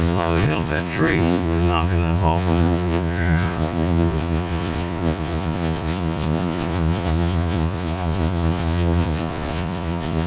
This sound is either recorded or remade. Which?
remade